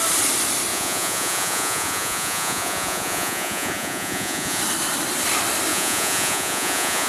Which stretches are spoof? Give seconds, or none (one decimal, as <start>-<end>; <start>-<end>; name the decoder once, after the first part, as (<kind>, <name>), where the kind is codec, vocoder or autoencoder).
0.7-4.6 (vocoder, Vocos); 5.7-7.1